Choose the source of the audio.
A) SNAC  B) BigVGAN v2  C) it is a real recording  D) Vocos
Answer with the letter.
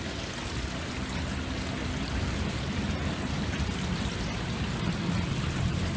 C